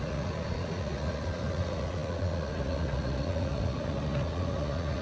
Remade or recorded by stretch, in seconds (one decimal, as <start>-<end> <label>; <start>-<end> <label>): 0.0-5.0 remade